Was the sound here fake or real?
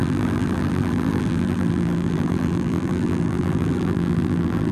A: fake